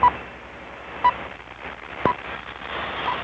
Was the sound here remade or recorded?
recorded